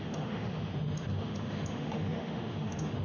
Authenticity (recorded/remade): remade